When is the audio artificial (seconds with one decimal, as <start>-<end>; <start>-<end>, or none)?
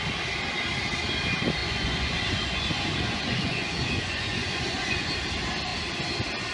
1.6-5.1